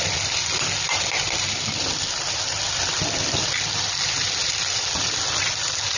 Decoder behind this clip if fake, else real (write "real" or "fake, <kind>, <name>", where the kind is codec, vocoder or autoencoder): real